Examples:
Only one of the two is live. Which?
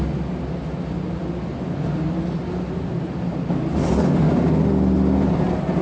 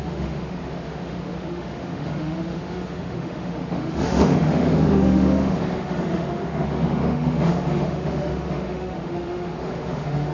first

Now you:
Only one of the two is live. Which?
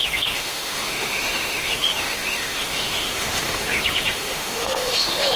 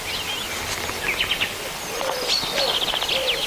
second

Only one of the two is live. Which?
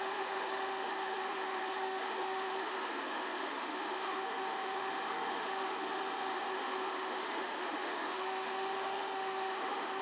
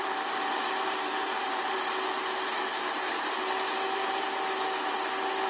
second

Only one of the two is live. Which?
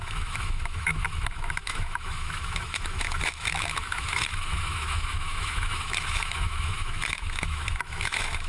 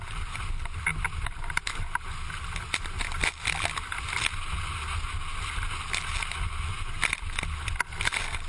second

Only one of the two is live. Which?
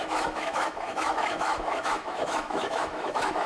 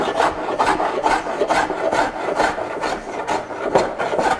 second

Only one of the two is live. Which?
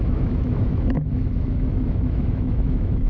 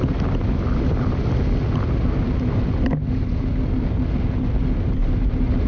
second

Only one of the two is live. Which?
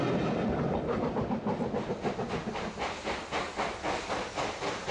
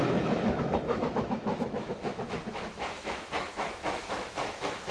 first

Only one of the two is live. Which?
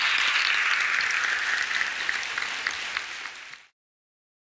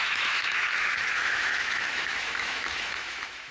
first